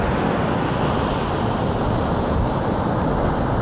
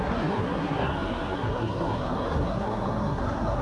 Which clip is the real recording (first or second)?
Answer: first